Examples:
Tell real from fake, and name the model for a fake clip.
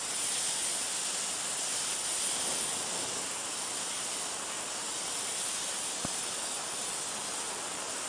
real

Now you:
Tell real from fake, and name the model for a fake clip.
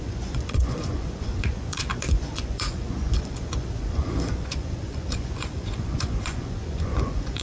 fake, vocoder, Vocos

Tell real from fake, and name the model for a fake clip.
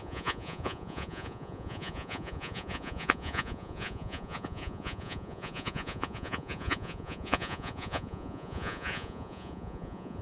fake, vocoder, Vocos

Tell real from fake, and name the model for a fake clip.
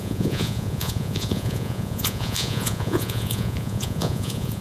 fake, vocoder, Vocos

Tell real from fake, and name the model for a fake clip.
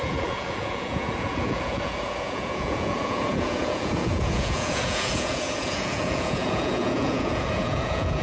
fake, vocoder, Vocos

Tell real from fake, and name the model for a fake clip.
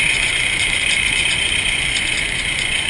fake, vocoder, Vocos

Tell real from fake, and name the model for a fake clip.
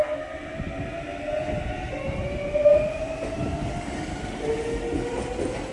real